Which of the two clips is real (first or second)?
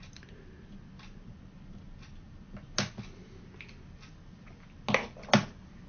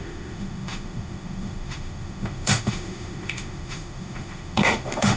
first